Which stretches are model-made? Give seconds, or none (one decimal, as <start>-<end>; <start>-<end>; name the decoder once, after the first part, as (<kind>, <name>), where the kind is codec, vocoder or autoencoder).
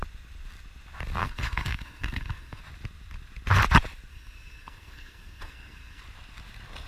1.2-2.6 (codec, SNAC); 4.1-6.0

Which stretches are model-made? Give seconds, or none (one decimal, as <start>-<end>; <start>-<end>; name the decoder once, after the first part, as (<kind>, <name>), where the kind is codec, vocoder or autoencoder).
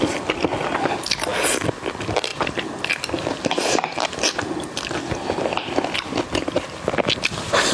none